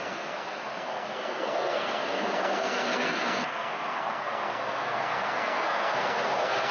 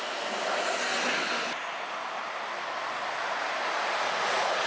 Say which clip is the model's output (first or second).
first